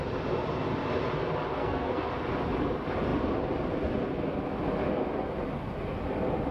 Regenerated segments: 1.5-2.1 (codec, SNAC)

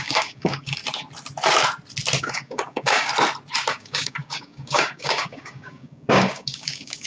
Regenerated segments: 0.0-0.8 (codec, DAC); 2.2-3.1; 3.7-7.1

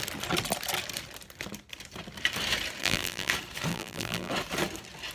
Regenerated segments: 2.8-3.3 (vocoder, BigVGAN v2); 3.7-4.3

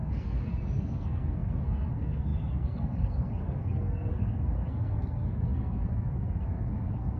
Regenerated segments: 0.0-7.2 (codec, SNAC)

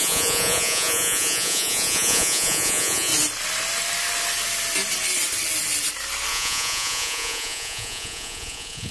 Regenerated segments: 0.0-3.1 (vocoder, Vocos); 6.3-8.9